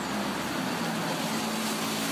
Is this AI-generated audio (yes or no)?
no